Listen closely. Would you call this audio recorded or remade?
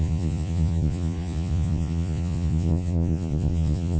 remade